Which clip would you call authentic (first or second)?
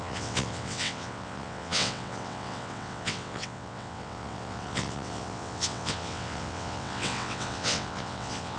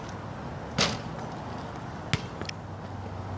second